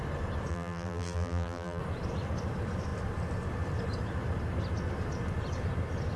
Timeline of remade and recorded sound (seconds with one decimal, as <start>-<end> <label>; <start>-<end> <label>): 0.0-0.5 recorded; 0.5-1.8 remade; 1.8-6.2 recorded

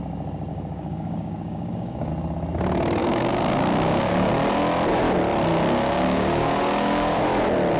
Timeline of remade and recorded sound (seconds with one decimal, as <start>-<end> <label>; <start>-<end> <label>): 0.0-0.5 recorded; 0.5-2.1 remade; 2.1-3.0 recorded; 3.0-4.3 remade; 4.3-5.5 recorded; 5.5-7.2 remade; 7.2-7.8 recorded

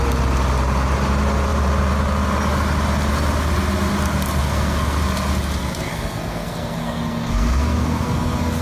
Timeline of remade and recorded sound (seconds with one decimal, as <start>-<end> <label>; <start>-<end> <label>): 0.0-4.4 recorded; 4.4-5.0 remade; 5.0-5.6 recorded; 5.6-8.6 remade